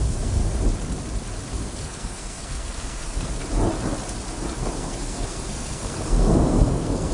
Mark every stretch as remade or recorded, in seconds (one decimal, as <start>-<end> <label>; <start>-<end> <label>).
0.0-0.4 remade; 0.4-1.5 recorded; 1.5-3.4 remade; 3.4-4.6 recorded; 4.6-7.1 remade